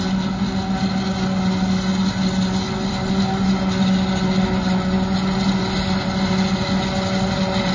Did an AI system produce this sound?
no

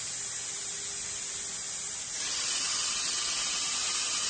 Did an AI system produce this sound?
no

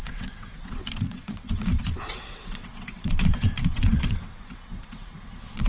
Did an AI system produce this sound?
yes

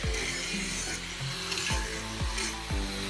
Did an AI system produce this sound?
no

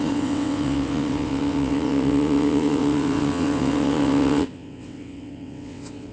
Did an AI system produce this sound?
yes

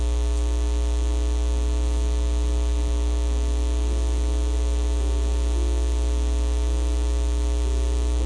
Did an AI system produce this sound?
no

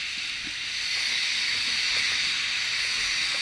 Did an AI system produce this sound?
no